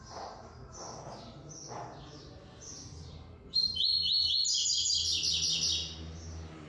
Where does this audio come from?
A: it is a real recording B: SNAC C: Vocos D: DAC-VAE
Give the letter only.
A